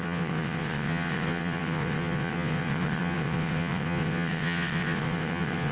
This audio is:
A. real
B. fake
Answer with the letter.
B